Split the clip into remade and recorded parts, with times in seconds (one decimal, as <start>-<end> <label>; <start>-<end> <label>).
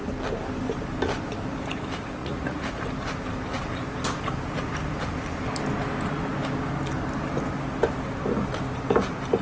0.0-2.2 recorded; 2.2-2.8 remade; 2.8-9.4 recorded